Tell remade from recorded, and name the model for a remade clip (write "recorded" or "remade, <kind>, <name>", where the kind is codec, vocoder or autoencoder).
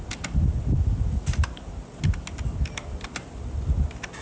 recorded